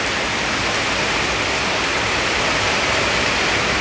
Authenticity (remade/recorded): recorded